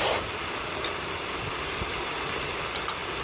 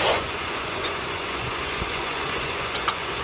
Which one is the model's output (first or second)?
second